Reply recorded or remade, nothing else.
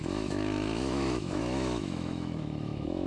remade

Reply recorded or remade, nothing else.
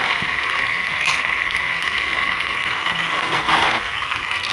remade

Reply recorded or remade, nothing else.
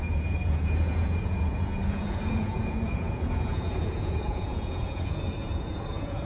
remade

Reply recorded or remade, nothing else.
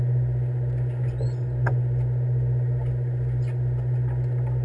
recorded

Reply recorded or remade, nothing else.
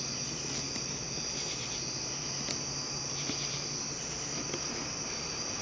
recorded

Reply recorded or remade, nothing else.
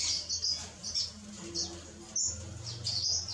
recorded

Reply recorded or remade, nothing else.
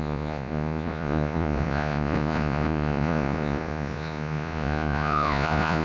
remade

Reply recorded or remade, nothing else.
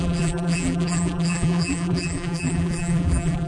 remade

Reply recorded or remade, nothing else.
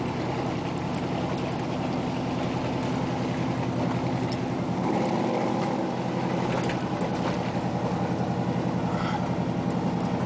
recorded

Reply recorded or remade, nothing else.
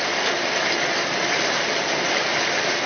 recorded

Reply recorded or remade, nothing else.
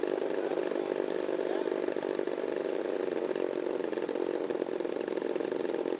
recorded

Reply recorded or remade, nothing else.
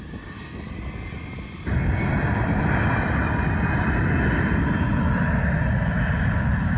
recorded